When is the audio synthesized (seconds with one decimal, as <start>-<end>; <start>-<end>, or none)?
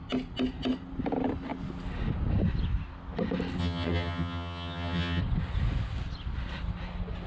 3.6-5.2